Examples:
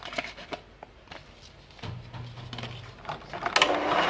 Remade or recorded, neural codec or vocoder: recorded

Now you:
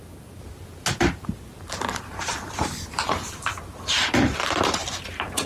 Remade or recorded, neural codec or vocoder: remade, vocoder, BigVGAN v2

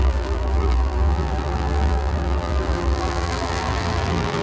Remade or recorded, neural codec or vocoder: remade, vocoder, BigVGAN v2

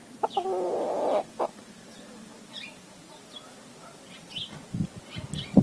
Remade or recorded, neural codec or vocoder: recorded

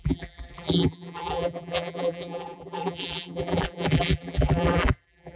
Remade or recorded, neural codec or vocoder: remade, vocoder, BigVGAN v2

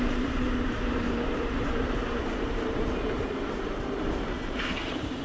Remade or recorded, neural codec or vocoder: remade, vocoder, BigVGAN v2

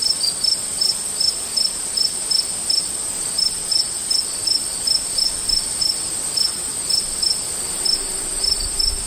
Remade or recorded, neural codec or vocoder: recorded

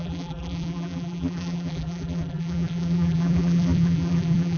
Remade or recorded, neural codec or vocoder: remade, vocoder, BigVGAN v2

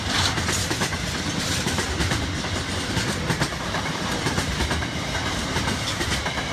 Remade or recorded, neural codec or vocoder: remade, vocoder, BigVGAN v2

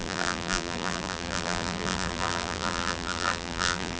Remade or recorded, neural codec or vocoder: remade, vocoder, BigVGAN v2